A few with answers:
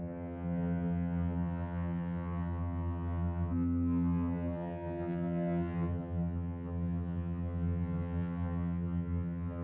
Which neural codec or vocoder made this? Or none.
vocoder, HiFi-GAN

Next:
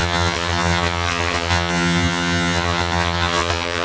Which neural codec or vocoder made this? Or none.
vocoder, HiFi-GAN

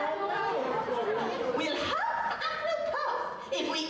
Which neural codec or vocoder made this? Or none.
none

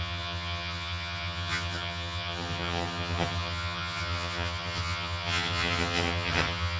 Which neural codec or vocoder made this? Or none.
vocoder, HiFi-GAN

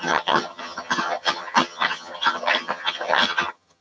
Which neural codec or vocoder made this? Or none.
vocoder, HiFi-GAN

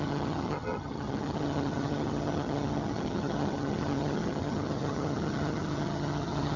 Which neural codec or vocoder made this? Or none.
vocoder, HiFi-GAN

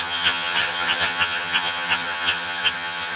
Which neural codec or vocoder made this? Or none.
vocoder, HiFi-GAN